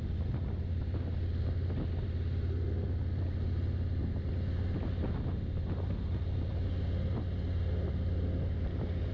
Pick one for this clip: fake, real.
real